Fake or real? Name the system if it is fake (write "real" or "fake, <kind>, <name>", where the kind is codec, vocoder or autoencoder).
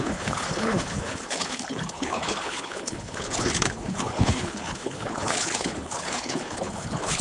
fake, codec, HILCodec